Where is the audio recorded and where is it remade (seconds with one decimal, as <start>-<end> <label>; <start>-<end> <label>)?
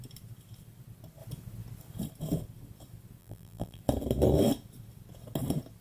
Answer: 0.0-3.2 recorded; 3.2-3.8 remade; 3.8-5.8 recorded